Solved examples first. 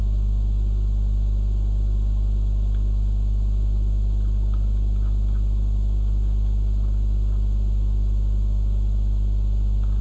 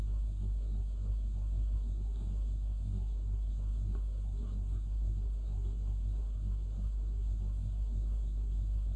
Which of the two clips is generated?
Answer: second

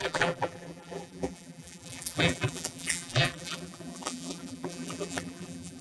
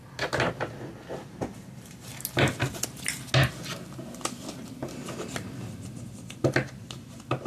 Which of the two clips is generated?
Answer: first